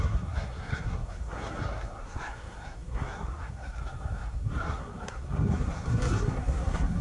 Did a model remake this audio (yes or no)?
yes